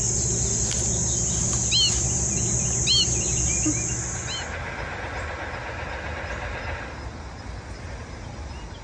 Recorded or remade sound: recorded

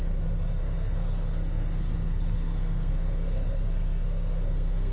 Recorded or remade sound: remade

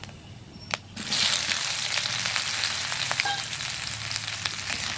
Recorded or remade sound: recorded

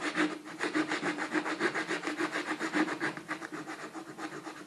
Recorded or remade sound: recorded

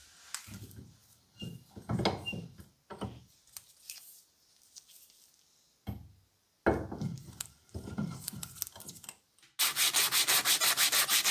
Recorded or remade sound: recorded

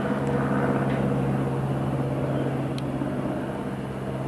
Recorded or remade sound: recorded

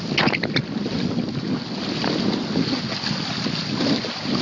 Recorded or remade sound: recorded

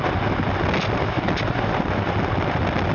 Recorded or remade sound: recorded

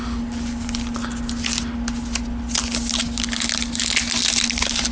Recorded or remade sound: recorded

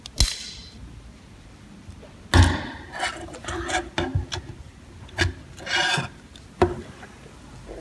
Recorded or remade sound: recorded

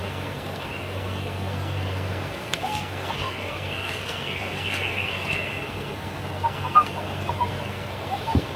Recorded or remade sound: remade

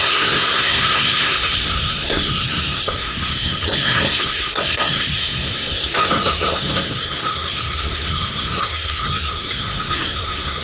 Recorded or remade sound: remade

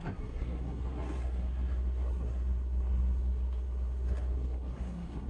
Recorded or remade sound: remade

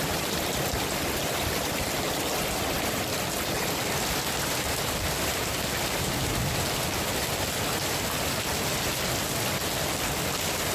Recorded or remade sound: recorded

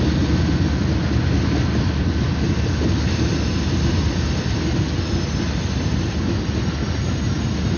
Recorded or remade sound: recorded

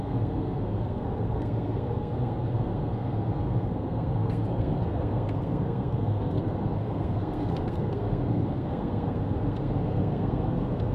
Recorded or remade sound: remade